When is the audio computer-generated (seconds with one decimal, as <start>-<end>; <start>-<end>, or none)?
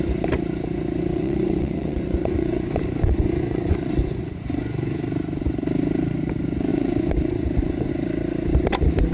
1.1-5.0; 6.7-7.9